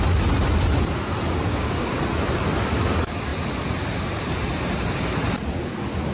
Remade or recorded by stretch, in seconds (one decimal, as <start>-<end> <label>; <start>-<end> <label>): 0.0-1.5 recorded; 1.5-2.0 remade; 2.0-6.1 recorded